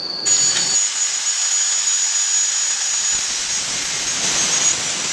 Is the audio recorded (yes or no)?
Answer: yes